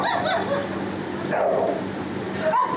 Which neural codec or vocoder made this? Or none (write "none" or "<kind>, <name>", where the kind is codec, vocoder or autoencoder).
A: none